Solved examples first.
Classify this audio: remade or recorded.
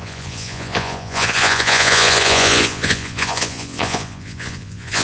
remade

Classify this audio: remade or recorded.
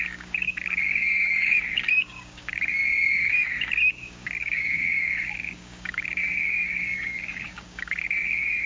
remade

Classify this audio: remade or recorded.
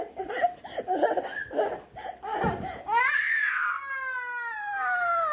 recorded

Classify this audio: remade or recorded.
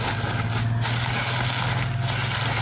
recorded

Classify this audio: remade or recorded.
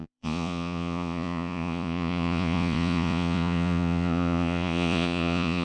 remade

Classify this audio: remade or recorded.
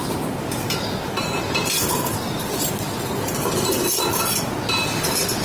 recorded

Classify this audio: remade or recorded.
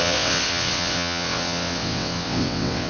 remade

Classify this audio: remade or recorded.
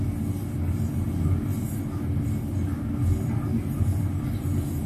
recorded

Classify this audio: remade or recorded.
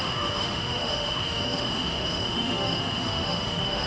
remade